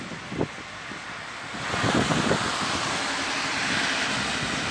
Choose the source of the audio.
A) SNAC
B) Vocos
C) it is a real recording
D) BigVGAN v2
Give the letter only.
C